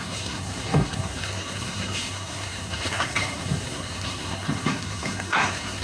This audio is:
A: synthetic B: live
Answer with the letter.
A